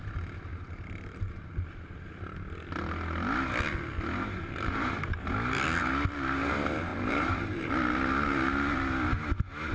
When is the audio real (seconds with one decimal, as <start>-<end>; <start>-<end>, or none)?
0.0-0.5; 1.3-4.2; 5.3-6.9; 7.7-9.7